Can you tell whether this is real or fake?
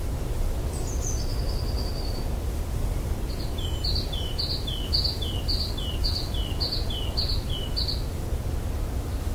real